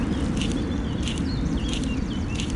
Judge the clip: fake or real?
real